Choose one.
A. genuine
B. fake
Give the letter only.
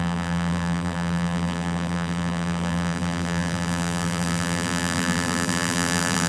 B